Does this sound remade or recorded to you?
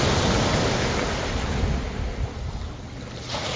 recorded